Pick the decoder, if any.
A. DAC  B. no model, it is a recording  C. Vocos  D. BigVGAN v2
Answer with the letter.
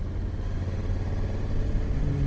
B